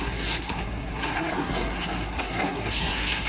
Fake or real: fake